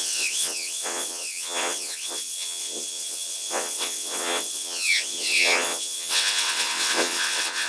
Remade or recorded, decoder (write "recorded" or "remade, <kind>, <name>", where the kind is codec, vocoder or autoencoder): remade, vocoder, WaveNeXt